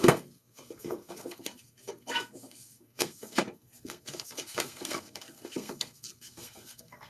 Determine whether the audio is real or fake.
fake